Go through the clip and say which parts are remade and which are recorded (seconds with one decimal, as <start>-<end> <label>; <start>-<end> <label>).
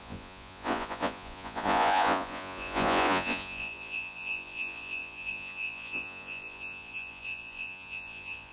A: 0.0-8.5 remade